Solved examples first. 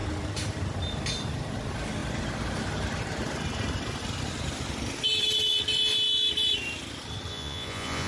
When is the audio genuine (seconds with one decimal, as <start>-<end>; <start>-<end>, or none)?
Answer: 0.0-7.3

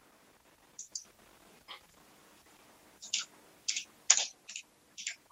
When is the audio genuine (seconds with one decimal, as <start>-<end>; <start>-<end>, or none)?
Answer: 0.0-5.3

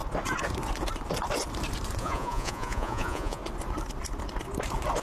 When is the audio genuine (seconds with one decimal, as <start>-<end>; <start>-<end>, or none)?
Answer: 0.0-2.0; 3.4-5.0

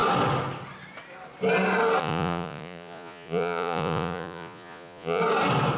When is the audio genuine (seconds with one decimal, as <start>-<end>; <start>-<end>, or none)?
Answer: 0.0-2.0; 5.2-5.8

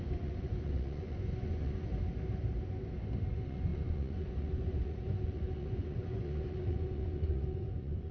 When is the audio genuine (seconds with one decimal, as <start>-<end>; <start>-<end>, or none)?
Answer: 1.9-3.3

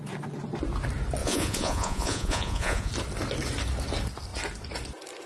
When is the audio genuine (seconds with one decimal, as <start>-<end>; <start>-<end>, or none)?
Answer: 0.0-1.2; 2.9-5.3

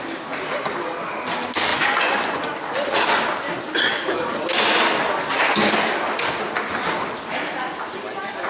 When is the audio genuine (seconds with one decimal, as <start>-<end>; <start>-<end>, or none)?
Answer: 0.0-1.7; 2.4-8.5

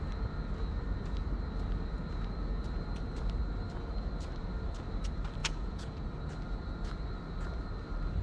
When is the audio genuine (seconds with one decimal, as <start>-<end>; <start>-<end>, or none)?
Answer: 0.0-5.4; 6.0-8.2